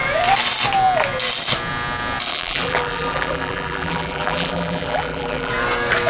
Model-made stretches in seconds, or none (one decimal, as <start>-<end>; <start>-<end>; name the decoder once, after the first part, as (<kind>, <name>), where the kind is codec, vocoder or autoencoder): 2.3-5.5 (vocoder, BigVGAN v2)